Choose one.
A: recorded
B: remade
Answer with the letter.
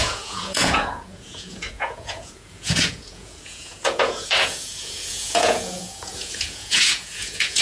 B